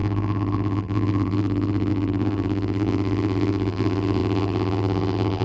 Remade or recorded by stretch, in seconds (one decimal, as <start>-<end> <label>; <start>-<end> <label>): 0.0-5.4 remade